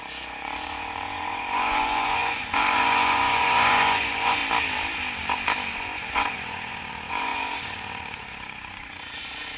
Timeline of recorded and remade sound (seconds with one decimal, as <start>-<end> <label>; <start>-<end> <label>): 0.0-4.4 remade; 4.4-5.7 recorded; 5.7-9.6 remade